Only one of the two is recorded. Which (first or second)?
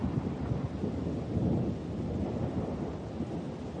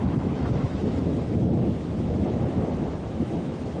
first